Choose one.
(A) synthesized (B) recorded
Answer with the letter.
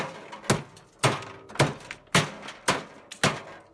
B